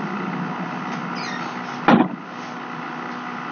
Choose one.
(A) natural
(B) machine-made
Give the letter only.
A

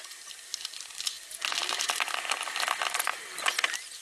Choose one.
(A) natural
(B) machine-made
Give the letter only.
A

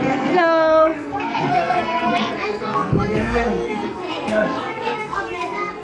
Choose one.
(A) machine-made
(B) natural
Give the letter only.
A